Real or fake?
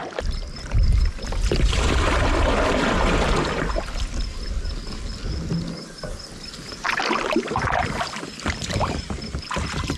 real